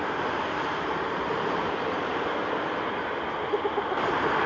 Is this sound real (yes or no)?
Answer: yes